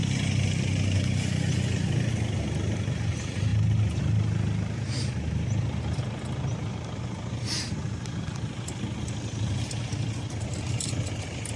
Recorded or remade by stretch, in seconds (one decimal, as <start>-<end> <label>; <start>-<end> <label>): 0.0-11.6 recorded